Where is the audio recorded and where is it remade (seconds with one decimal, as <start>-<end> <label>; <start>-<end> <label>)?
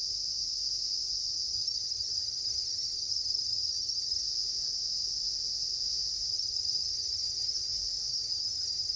0.0-1.5 recorded; 1.5-4.2 remade; 4.2-6.3 recorded; 6.3-7.7 remade; 7.7-8.1 recorded; 8.1-9.0 remade